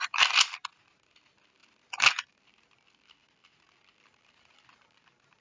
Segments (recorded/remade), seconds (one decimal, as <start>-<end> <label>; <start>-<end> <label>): 0.0-5.4 recorded